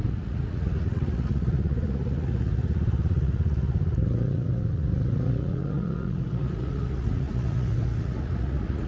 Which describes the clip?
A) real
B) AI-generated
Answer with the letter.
B